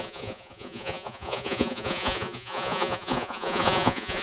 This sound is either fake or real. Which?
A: fake